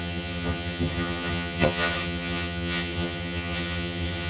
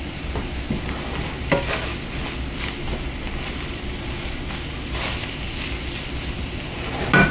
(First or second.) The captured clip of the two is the second